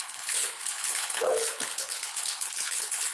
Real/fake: fake